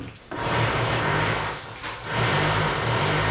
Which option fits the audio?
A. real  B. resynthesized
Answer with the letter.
A